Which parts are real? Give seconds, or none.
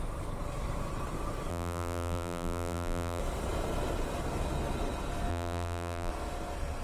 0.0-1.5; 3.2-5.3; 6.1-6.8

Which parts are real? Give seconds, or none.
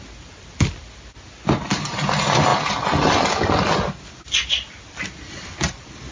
0.0-6.1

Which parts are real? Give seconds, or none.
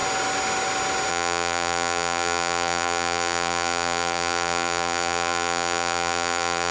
0.0-1.1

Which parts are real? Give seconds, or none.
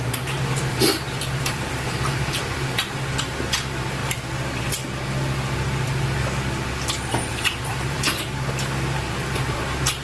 0.0-0.7; 2.9-7.3; 8.2-10.0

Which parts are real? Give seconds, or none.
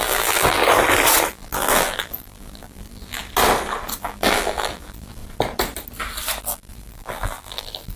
0.6-1.3; 3.2-4.0; 5.2-6.4